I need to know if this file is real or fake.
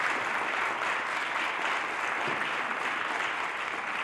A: real